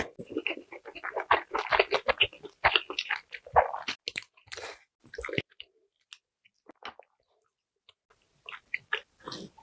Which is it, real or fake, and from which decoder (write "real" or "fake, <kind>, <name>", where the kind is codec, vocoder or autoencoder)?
real